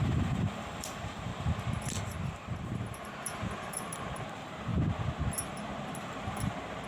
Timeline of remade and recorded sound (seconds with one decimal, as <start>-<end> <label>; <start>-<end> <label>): 0.0-1.3 remade; 1.3-2.0 recorded; 2.0-4.7 remade; 4.7-5.4 recorded; 5.4-6.9 remade